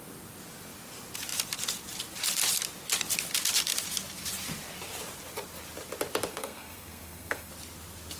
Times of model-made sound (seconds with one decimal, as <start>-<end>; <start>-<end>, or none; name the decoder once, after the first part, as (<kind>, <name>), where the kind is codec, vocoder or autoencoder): 6.3-7.5 (codec, SNAC)